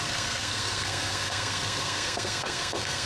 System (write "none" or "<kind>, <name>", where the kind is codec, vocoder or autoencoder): codec, SNAC